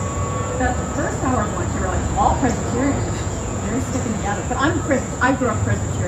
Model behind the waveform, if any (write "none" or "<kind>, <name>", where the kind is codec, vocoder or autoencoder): vocoder, Vocos